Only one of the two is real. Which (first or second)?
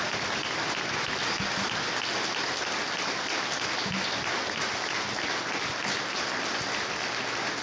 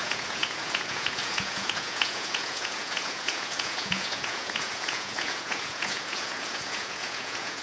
first